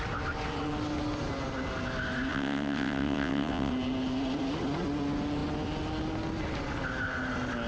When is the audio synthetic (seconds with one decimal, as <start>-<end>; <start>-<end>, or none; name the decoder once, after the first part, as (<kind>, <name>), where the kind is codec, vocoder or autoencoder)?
2.3-3.7 (vocoder, WaveNeXt)

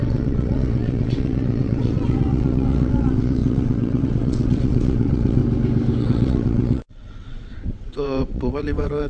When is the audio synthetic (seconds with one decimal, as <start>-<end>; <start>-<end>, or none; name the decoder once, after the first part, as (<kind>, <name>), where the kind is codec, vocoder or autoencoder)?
0.0-5.4 (vocoder, WaveNeXt); 6.0-9.1

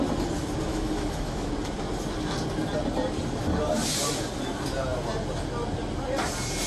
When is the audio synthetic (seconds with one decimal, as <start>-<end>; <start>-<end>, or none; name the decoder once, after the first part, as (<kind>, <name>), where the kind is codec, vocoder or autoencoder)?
0.7-1.5 (autoencoder, DAC-VAE)

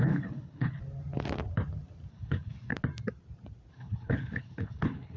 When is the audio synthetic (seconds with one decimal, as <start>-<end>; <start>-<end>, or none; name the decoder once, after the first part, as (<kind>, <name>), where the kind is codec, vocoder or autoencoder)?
0.0-0.8 (codec, HILCodec); 2.1-2.7; 3.7-5.2